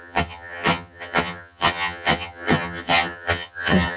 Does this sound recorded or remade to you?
remade